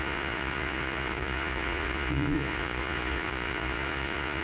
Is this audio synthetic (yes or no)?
yes